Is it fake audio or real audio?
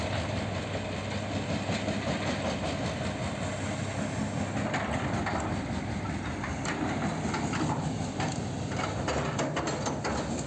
real